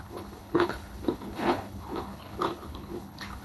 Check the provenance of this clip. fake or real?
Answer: fake